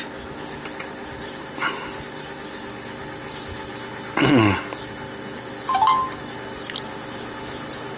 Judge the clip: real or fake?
real